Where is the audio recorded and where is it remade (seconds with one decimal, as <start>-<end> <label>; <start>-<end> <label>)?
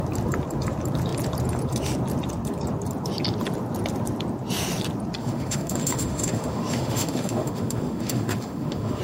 0.0-5.2 recorded; 5.2-9.0 remade